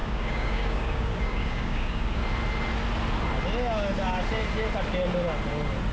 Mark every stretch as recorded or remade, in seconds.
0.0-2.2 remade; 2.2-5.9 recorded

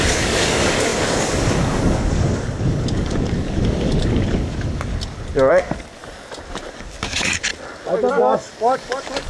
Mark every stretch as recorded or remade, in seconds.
0.0-4.9 remade; 4.9-5.5 recorded; 5.5-6.0 remade; 6.0-6.7 recorded; 6.7-7.5 remade; 7.5-8.1 recorded; 8.1-9.3 remade

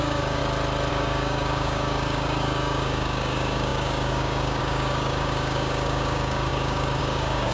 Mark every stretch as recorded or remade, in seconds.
0.0-0.4 remade; 0.4-0.9 recorded; 0.9-7.5 remade

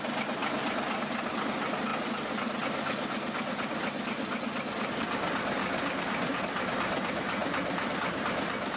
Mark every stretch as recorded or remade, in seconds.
0.0-5.6 recorded; 5.6-6.4 remade; 6.4-8.8 recorded

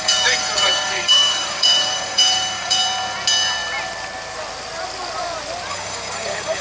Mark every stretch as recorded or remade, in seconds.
0.0-2.8 remade; 2.8-5.7 recorded; 5.7-6.6 remade

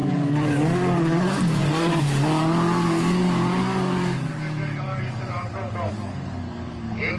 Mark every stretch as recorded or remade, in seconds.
0.0-7.2 remade

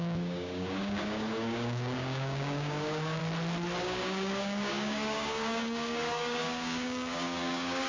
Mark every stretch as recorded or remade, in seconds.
0.0-3.2 remade; 3.2-3.8 recorded; 3.8-7.9 remade